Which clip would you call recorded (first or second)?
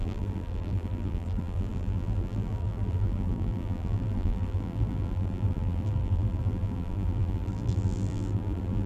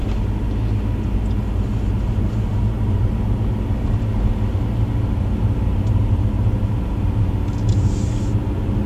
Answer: second